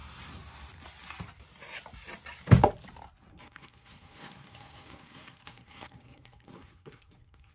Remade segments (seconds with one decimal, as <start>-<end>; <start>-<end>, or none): 3.3-7.5